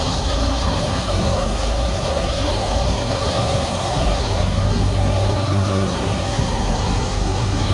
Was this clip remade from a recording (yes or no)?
yes